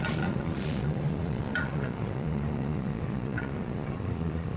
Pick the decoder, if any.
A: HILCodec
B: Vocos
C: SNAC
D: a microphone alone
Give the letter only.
B